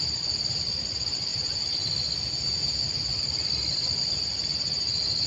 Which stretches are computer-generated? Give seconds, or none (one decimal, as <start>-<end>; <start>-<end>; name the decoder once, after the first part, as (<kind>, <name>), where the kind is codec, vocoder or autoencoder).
none